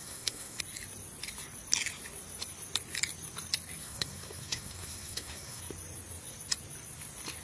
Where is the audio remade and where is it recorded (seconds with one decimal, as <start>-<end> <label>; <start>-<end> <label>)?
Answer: 0.0-0.6 remade; 0.6-3.8 recorded; 3.8-5.6 remade; 5.6-7.4 recorded

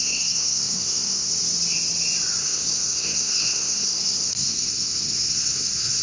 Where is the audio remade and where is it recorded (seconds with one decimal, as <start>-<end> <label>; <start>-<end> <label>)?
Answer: 0.0-1.3 remade; 1.3-2.4 recorded; 2.4-6.0 remade

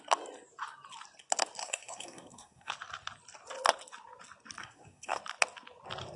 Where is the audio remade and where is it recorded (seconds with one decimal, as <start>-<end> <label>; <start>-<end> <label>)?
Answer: 0.0-1.6 recorded; 1.6-2.7 remade; 2.7-4.6 recorded; 4.6-5.2 remade; 5.2-6.2 recorded

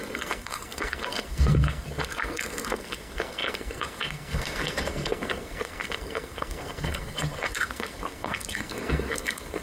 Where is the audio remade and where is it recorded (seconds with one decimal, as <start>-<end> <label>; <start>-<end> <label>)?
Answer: 0.0-9.6 remade

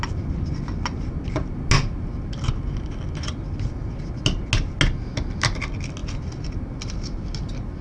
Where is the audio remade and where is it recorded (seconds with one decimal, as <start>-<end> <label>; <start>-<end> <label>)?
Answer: 0.0-7.8 recorded

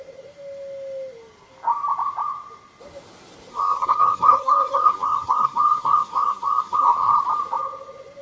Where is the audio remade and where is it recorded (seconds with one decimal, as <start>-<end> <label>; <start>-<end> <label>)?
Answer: 0.0-3.5 recorded; 3.5-7.2 remade; 7.2-8.2 recorded